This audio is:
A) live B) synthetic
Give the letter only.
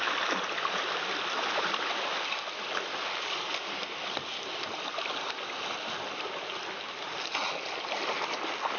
A